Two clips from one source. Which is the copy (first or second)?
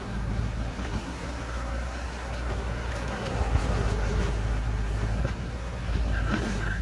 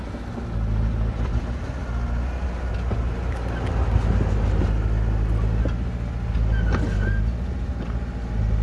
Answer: first